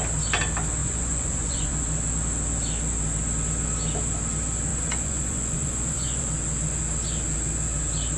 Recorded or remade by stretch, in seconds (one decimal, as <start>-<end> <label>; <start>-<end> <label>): 0.0-0.8 recorded; 0.8-1.7 remade; 1.7-4.7 recorded; 4.7-6.3 remade; 6.3-8.2 recorded

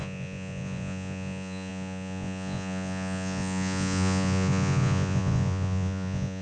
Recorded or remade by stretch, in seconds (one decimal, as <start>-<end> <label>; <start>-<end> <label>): 0.0-6.4 remade

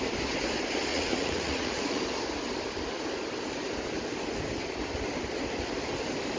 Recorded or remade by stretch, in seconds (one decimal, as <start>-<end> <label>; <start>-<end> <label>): 0.0-0.9 recorded; 0.9-2.0 remade; 2.0-6.4 recorded

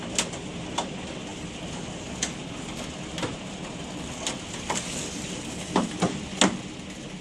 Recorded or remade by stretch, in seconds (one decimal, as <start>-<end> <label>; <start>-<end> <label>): 0.0-7.2 recorded

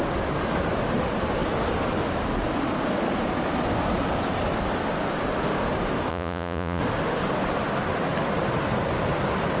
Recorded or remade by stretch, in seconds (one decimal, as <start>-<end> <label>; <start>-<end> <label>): 0.0-6.1 recorded; 6.1-6.8 remade; 6.8-9.6 recorded